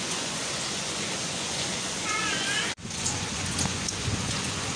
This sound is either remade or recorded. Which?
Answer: remade